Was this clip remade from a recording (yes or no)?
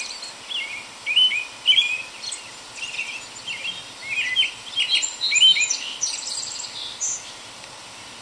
no